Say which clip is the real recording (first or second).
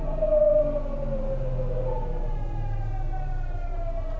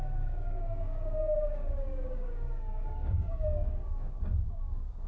first